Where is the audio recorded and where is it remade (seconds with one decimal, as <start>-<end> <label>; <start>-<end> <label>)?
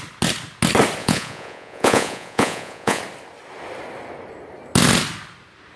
0.0-1.0 recorded; 1.0-3.0 remade; 3.0-5.8 recorded